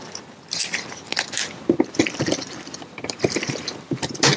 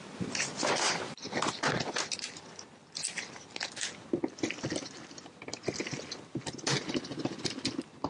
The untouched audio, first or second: second